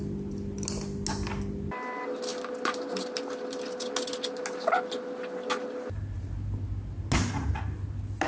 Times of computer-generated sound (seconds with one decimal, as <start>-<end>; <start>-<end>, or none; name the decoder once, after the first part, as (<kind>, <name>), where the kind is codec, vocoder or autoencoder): none